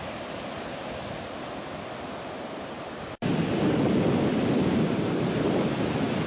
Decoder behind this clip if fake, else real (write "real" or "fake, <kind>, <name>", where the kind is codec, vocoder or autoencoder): real